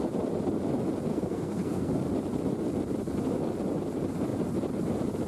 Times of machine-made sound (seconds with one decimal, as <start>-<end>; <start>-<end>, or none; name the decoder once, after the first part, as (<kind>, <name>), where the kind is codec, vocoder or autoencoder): 1.1-1.9 (codec, SNAC)